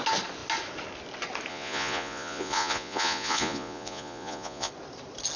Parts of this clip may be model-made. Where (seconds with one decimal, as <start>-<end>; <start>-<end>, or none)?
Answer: 1.5-4.7